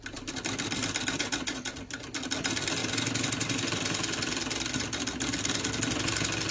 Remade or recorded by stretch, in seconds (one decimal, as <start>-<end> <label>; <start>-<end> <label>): 0.0-6.5 recorded